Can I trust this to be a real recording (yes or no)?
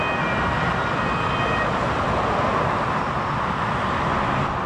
yes